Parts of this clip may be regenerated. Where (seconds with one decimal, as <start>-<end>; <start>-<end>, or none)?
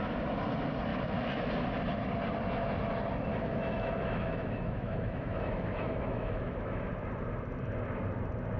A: 0.9-1.5; 3.3-6.9